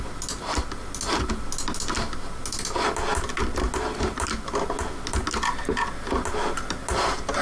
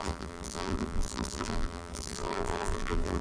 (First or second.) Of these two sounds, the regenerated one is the second